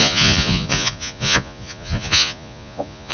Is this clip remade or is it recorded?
remade